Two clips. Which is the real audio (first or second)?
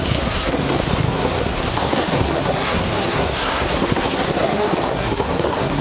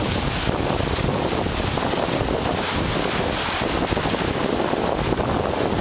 second